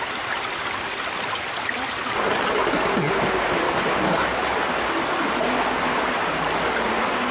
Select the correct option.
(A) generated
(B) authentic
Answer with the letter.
B